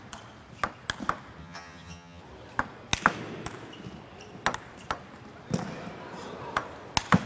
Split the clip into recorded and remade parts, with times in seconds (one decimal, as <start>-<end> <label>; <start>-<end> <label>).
0.0-1.4 recorded; 1.4-2.2 remade; 2.2-7.3 recorded